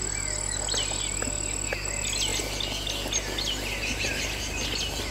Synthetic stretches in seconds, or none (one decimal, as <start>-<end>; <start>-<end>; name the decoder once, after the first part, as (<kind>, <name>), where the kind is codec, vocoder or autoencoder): none